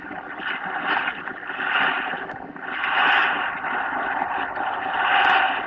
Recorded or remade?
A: recorded